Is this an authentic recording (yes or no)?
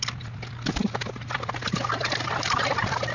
yes